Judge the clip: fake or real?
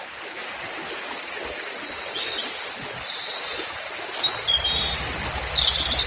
real